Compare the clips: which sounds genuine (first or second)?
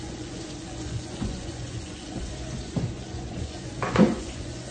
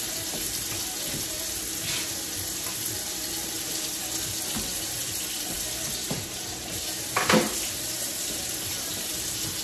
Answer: second